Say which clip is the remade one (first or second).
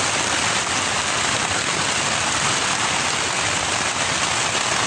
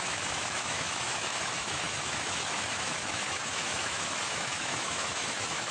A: second